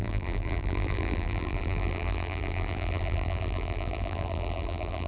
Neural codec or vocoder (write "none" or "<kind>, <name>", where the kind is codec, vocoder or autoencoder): vocoder, BigVGAN v2